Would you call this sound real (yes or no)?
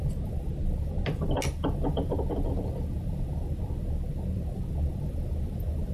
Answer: yes